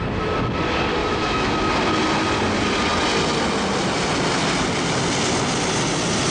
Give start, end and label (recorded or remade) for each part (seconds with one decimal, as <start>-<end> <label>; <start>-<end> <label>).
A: 0.0-1.0 recorded; 1.0-1.5 remade; 1.5-6.3 recorded